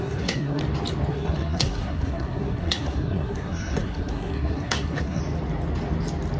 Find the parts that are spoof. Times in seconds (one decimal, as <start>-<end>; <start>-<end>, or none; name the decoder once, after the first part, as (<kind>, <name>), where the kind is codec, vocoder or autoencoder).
0.0-0.6 (codec, SNAC); 1.1-5.2